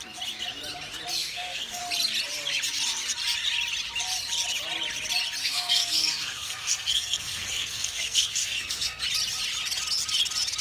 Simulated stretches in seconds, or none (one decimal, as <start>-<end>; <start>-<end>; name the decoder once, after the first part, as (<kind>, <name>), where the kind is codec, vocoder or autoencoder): 1.2-1.8 (codec, SNAC); 5.4-9.0